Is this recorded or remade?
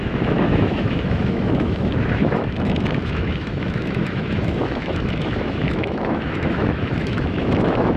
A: remade